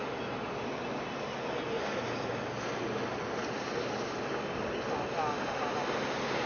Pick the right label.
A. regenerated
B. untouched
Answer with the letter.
B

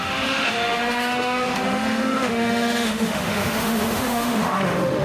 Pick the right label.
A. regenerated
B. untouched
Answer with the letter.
A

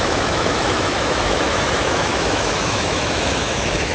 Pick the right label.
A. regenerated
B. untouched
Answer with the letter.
A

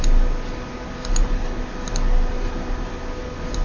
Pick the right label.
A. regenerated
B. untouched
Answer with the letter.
B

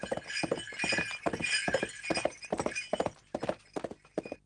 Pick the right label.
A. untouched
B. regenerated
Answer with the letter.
A